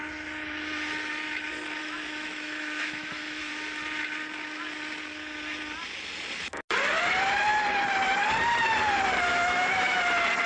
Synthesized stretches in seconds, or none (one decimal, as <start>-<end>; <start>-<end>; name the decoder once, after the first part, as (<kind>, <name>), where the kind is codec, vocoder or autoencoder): 1.8-3.5 (autoencoder, DAC-VAE); 9.3-10.0